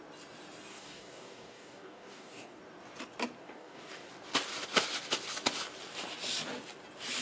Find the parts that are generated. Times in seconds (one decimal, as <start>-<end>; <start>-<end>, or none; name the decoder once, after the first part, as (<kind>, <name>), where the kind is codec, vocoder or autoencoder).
0.7-2.6 (codec, DAC); 3.4-4.1